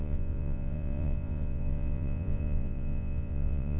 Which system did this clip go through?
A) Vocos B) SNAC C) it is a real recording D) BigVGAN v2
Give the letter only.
A